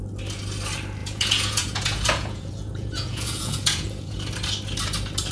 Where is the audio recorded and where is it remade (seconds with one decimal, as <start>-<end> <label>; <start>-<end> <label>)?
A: 0.0-1.0 recorded; 1.0-4.2 remade; 4.2-5.3 recorded